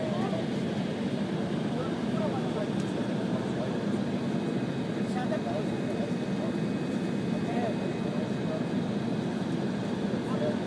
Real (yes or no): yes